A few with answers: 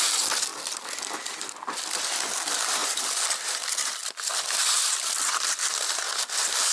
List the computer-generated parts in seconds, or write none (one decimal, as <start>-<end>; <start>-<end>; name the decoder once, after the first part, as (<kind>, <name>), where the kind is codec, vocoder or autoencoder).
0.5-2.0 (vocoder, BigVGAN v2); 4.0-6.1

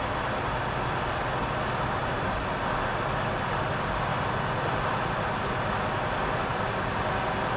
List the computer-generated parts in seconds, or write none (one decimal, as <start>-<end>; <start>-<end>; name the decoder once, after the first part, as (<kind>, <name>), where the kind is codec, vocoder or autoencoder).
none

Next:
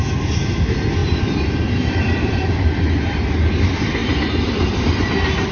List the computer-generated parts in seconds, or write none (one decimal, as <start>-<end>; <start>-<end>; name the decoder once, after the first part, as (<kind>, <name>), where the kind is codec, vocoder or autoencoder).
1.0-2.5 (vocoder, BigVGAN v2)

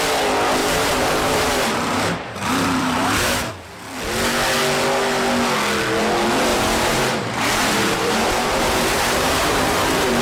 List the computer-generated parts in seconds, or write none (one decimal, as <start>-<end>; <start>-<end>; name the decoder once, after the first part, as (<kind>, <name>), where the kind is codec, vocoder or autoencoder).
0.6-3.5 (vocoder, BigVGAN v2); 6.5-10.2